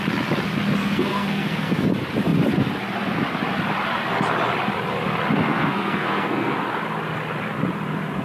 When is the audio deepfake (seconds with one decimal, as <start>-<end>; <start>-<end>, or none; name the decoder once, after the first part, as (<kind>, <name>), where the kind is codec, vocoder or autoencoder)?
0.8-1.9 (codec, SNAC); 5.5-6.6